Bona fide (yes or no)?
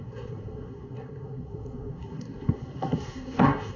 no